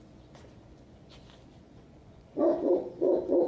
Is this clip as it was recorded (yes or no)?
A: no